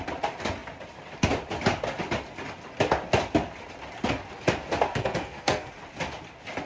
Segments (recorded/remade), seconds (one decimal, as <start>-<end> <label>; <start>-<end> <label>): 0.0-4.9 recorded; 4.9-5.7 remade; 5.7-6.7 recorded